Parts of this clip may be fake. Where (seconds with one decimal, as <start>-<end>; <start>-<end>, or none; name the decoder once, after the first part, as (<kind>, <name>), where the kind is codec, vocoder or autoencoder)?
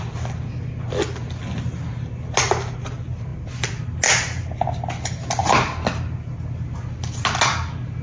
none